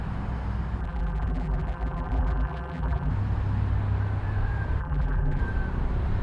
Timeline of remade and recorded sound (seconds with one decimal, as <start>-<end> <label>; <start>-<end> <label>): 0.0-0.8 recorded; 0.8-3.1 remade; 3.1-4.8 recorded; 4.8-5.4 remade; 5.4-6.2 recorded